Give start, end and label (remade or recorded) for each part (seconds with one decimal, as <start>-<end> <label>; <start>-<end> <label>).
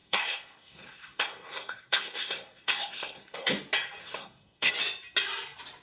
0.0-3.5 remade; 3.5-4.0 recorded; 4.0-4.7 remade; 4.7-5.8 recorded